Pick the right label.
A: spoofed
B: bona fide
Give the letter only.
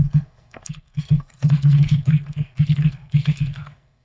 A